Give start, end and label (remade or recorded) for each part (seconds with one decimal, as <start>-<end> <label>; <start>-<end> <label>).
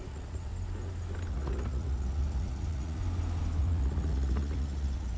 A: 0.0-0.5 remade; 0.5-1.3 recorded; 1.3-3.0 remade; 3.0-3.6 recorded; 3.6-5.2 remade